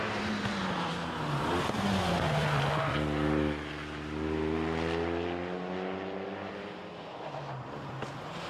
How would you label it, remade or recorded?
recorded